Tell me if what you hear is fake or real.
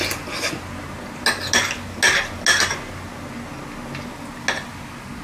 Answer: real